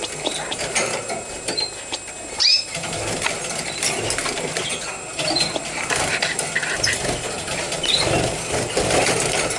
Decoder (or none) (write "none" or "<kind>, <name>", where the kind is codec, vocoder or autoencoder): none